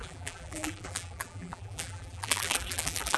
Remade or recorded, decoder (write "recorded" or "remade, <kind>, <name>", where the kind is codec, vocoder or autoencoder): remade, vocoder, BigVGAN v2